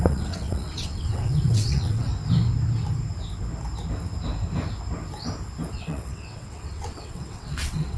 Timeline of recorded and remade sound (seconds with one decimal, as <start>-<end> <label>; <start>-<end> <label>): 0.0-2.1 remade; 2.1-5.7 recorded; 5.7-8.0 remade